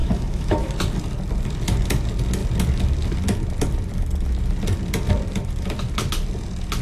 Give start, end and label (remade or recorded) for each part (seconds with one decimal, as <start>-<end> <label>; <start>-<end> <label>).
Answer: 0.0-0.7 remade; 0.7-6.8 recorded